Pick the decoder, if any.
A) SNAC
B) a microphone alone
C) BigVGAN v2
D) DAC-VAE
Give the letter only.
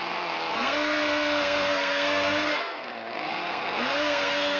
A